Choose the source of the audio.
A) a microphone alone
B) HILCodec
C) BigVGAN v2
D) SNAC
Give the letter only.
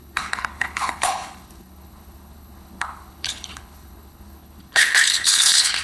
B